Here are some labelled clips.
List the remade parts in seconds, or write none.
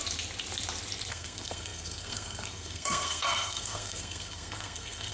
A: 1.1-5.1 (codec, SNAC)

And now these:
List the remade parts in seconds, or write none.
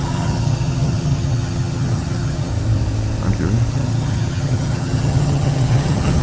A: 0.0-2.5 (vocoder, HiFi-GAN); 3.7-6.2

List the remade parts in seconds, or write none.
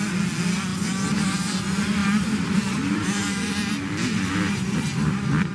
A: 0.7-1.6 (vocoder, BigVGAN v2); 2.0-5.5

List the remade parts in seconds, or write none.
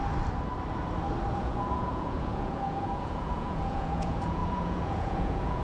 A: 1.3-5.6 (vocoder, Vocos)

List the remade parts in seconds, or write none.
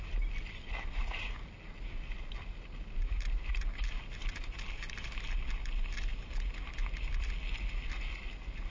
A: none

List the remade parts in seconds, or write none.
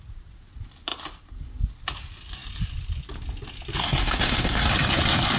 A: 3.8-4.7 (codec, SNAC)